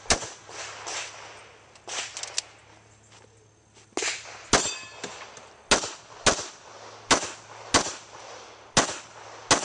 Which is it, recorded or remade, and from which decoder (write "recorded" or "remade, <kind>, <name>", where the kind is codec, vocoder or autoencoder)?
recorded